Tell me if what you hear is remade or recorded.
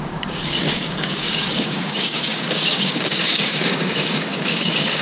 remade